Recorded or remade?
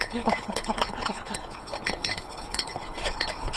remade